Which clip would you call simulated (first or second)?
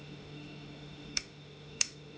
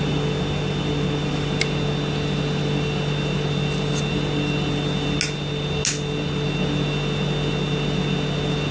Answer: first